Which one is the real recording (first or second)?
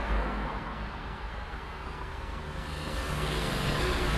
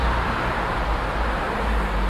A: second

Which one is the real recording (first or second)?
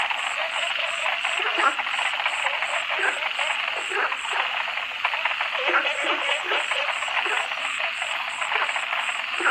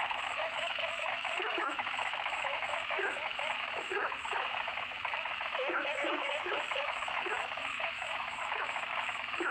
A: first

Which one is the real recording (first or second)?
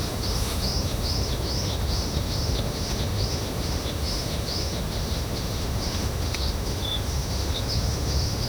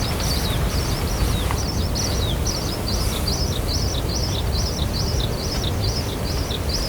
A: second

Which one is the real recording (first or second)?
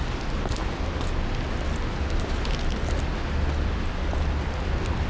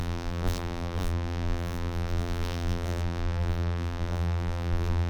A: first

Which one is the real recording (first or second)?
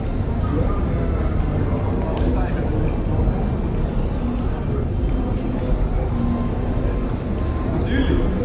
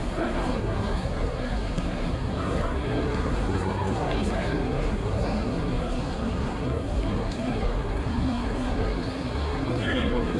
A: first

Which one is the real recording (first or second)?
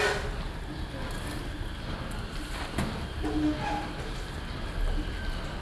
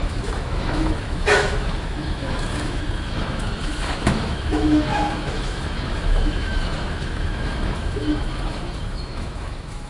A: first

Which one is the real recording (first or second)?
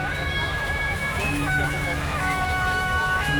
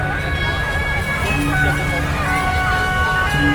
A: second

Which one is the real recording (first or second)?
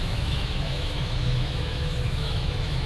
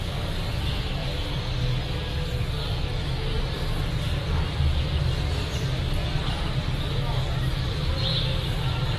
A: second